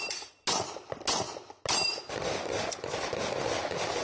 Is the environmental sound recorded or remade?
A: recorded